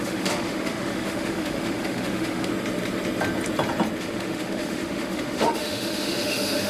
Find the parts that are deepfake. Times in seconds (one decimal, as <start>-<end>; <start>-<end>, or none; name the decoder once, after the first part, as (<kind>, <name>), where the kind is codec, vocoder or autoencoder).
0.0-2.5 (autoencoder, DAC-VAE); 4.0-6.7